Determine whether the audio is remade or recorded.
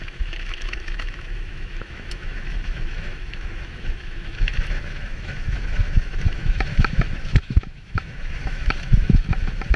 remade